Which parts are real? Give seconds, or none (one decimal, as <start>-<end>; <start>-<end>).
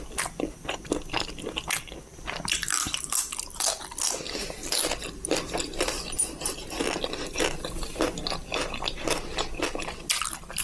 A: 0.0-10.6